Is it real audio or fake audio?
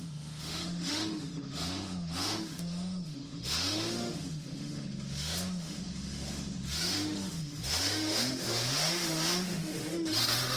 fake